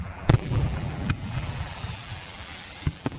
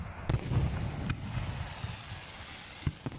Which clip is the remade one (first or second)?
first